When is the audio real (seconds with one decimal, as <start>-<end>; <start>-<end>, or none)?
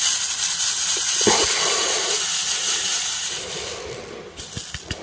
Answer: 0.0-1.8; 3.4-5.0